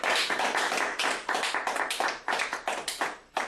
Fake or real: fake